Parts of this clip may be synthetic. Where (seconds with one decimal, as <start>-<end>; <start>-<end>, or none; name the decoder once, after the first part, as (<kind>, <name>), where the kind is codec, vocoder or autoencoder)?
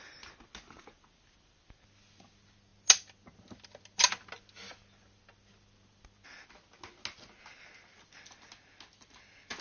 none